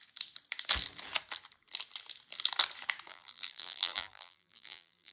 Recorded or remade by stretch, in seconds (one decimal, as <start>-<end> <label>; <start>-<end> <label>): 0.0-3.1 recorded; 3.1-5.1 remade